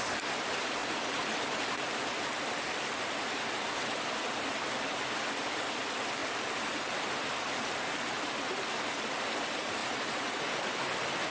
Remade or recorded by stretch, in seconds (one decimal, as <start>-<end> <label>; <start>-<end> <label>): 0.0-0.8 recorded; 0.8-1.4 remade; 1.4-6.2 recorded; 6.2-8.2 remade; 8.2-9.8 recorded; 9.8-10.4 remade; 10.4-11.3 recorded